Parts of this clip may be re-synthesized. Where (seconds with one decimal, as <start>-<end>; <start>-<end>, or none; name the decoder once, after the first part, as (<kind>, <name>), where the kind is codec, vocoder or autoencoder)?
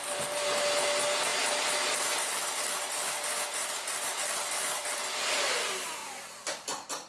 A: none